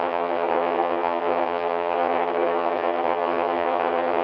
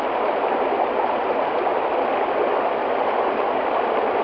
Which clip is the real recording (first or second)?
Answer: second